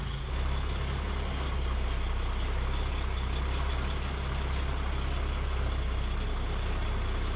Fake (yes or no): no